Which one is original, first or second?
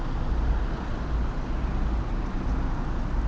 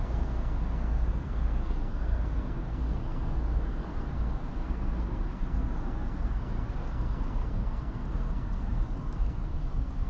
first